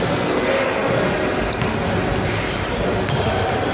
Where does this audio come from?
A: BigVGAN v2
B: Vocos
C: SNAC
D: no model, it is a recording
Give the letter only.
D